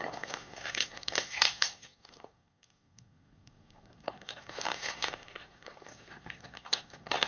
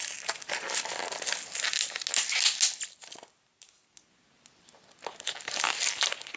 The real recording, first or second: second